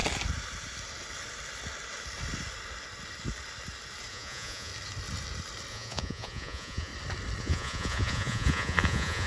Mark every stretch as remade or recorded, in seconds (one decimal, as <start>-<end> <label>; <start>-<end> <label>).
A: 0.0-4.1 recorded; 4.1-4.7 remade; 4.7-5.7 recorded; 5.7-6.9 remade; 6.9-7.4 recorded; 7.4-9.3 remade